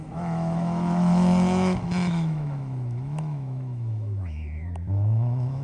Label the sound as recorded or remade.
remade